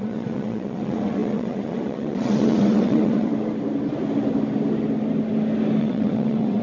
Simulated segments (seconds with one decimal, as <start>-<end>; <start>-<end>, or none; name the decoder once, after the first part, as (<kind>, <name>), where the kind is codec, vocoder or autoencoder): 0.0-3.3 (vocoder, WaveNeXt); 5.8-6.6